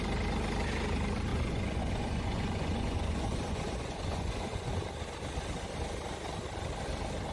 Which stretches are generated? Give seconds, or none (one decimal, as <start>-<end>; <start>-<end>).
1.3-4.7